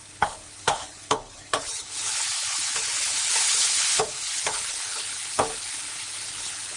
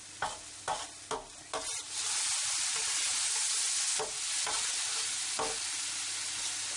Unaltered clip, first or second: second